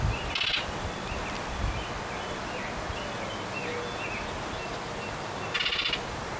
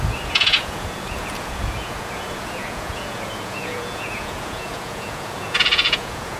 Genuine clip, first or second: first